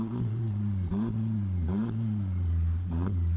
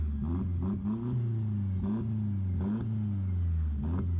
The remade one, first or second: first